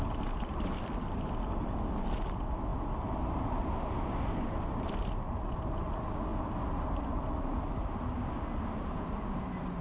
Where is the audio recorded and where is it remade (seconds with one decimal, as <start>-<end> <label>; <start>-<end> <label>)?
0.0-9.8 recorded

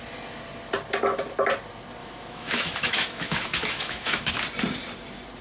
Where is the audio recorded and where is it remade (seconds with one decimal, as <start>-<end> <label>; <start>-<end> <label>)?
0.0-2.0 recorded; 2.0-4.3 remade; 4.3-5.4 recorded

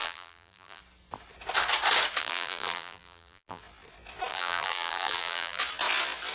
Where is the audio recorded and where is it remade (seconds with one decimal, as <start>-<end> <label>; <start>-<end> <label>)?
0.0-0.8 remade; 0.8-2.2 recorded; 2.2-3.6 remade; 3.6-4.3 recorded; 4.3-5.6 remade; 5.6-6.3 recorded

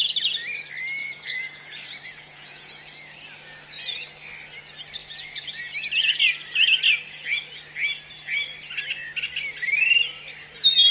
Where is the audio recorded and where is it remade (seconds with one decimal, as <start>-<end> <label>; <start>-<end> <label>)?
0.0-1.0 recorded; 1.0-2.7 remade; 2.7-5.0 recorded; 5.0-5.6 remade; 5.6-10.9 recorded